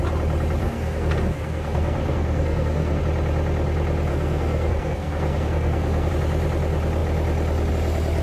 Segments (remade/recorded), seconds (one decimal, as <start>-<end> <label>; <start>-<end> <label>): 0.0-0.6 recorded; 0.6-3.0 remade; 3.0-4.1 recorded; 4.1-6.1 remade; 6.1-8.2 recorded